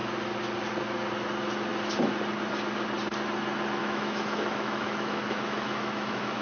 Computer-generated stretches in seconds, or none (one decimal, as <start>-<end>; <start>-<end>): 3.8-6.4